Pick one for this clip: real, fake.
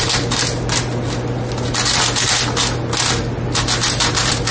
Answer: real